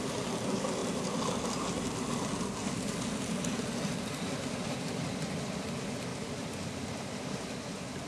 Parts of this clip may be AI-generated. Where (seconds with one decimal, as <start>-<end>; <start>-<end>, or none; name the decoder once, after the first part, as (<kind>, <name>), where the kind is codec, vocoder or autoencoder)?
none